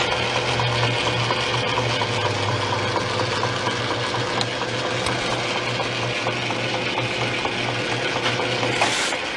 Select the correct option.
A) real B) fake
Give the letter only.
A